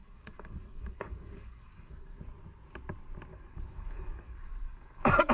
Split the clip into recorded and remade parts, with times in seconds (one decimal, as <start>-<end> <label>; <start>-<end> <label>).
0.0-2.2 remade; 2.2-3.3 recorded; 3.3-5.3 remade